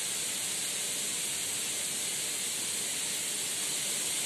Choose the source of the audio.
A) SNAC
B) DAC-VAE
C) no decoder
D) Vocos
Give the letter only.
C